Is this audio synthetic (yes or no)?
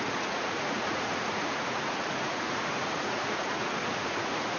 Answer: yes